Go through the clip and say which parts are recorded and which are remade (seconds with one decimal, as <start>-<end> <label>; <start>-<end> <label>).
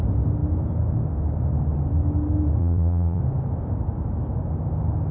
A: 0.0-2.6 recorded; 2.6-3.2 remade; 3.2-5.1 recorded